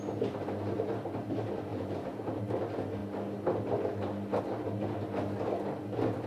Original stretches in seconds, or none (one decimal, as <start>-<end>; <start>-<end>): 0.0-1.7; 2.4-6.3